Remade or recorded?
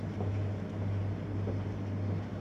recorded